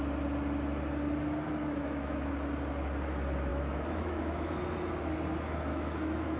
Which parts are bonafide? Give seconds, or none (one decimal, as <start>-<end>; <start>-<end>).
0.0-1.6; 2.3-3.5; 4.6-5.7